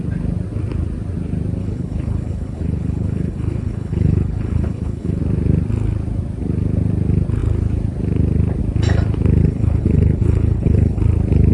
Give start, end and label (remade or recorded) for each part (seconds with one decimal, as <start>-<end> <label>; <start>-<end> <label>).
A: 0.0-1.6 recorded; 1.6-5.2 remade; 5.2-9.4 recorded; 9.4-11.0 remade; 11.0-11.5 recorded